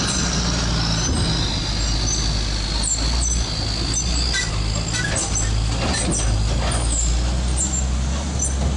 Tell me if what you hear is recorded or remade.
recorded